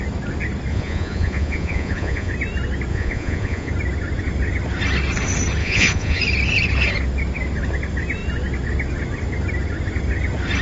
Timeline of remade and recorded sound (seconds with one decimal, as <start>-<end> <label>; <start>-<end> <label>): 0.0-0.7 recorded; 0.7-2.3 remade; 2.3-2.9 recorded; 2.9-3.7 remade; 3.7-5.6 recorded; 5.6-6.2 remade; 6.2-10.6 recorded